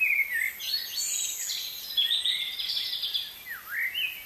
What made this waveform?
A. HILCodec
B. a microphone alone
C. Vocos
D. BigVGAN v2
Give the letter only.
B